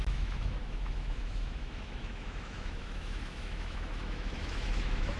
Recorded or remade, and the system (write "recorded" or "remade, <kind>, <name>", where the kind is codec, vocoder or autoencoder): remade, autoencoder, DAC-VAE